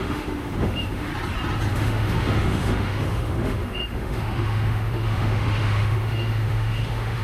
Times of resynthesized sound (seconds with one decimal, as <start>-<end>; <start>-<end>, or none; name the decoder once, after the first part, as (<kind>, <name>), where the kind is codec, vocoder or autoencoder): 0.0-1.1 (autoencoder, DAC-VAE); 1.7-7.2